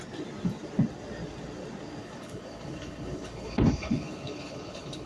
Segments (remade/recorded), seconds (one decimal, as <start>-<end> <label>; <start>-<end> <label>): 0.0-2.0 recorded; 2.0-5.1 remade